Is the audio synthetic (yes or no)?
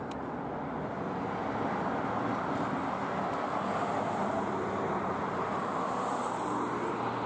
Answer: no